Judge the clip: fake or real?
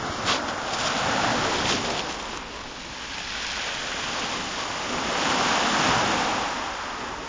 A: real